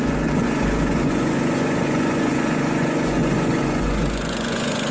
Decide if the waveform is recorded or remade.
remade